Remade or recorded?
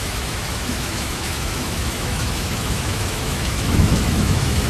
remade